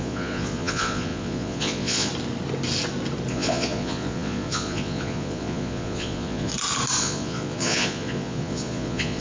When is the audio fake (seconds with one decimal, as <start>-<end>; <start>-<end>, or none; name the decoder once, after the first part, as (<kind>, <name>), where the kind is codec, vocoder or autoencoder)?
0.0-2.1 (vocoder, Vocos); 3.3-6.5; 7.0-9.2